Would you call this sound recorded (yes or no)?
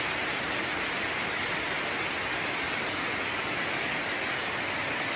yes